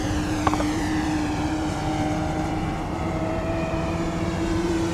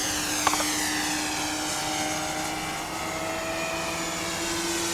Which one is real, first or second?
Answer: second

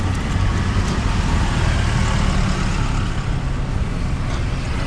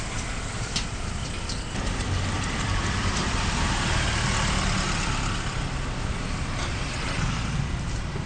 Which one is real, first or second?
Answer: first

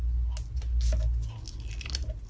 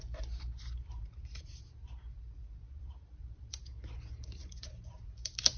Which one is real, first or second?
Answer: first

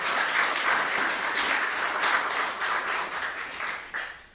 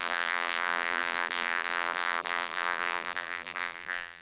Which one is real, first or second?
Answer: first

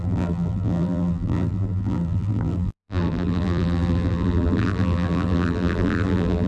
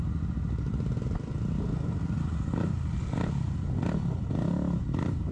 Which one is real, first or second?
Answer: second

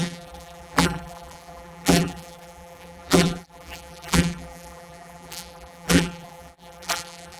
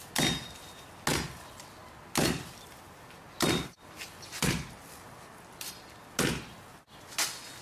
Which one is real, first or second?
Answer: second